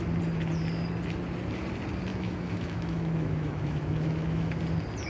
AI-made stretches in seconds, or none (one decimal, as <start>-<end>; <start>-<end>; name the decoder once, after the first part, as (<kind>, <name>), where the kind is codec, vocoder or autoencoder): 2.1-4.6 (autoencoder, DAC-VAE)